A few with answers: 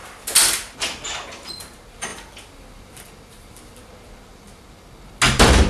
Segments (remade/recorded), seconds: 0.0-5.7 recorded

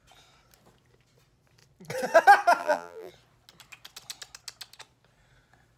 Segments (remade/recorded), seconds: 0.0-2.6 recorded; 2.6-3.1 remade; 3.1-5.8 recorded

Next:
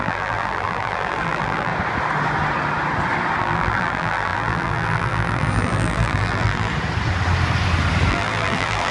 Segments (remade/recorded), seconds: 0.0-1.7 remade; 1.7-3.4 recorded; 3.4-6.7 remade; 6.7-8.1 recorded; 8.1-8.9 remade

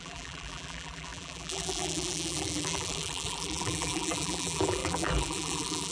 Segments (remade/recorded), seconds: 0.0-5.9 remade

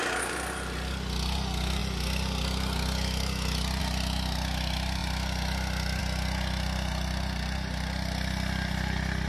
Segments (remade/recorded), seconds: 0.0-9.3 recorded

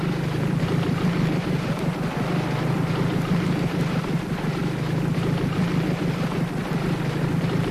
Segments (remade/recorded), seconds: 0.0-4.6 remade; 4.6-6.6 recorded; 6.6-7.7 remade